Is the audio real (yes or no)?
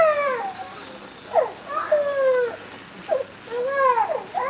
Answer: yes